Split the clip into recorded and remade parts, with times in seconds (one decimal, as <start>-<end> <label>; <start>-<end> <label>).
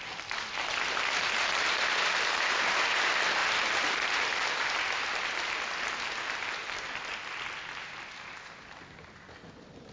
0.0-9.9 recorded